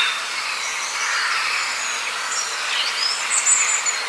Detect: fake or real real